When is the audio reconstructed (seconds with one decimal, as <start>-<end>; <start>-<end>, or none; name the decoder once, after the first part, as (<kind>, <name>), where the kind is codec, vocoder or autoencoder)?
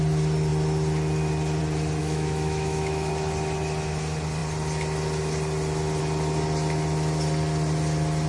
2.0-3.1 (autoencoder, DAC-VAE)